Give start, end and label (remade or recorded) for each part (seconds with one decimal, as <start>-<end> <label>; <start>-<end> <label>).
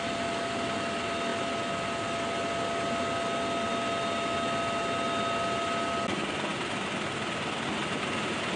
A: 0.0-8.6 recorded